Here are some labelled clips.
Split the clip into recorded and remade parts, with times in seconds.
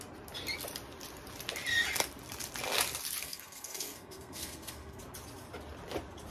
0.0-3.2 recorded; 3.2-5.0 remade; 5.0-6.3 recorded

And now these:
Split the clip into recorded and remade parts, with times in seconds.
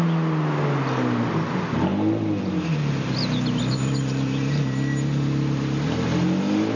0.0-6.8 recorded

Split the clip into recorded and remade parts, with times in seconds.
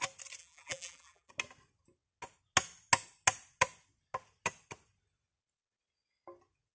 0.0-0.4 recorded; 0.4-1.3 remade; 1.3-6.7 recorded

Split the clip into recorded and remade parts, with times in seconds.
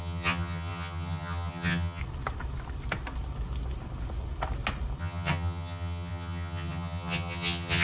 0.0-2.0 remade; 2.0-5.0 recorded; 5.0-7.8 remade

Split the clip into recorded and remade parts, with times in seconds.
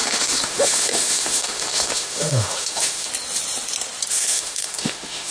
0.0-3.1 remade; 3.1-4.1 recorded; 4.1-5.3 remade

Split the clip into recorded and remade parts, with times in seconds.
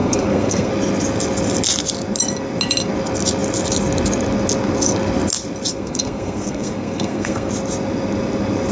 0.0-0.7 remade; 0.7-5.7 recorded; 5.7-7.5 remade; 7.5-8.7 recorded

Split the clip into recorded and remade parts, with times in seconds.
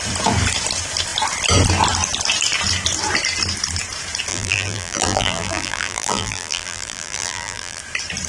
0.0-4.3 recorded; 4.3-7.8 remade; 7.8-8.3 recorded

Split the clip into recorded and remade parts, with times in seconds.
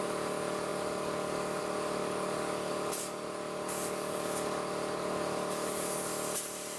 0.0-6.1 remade; 6.1-6.8 recorded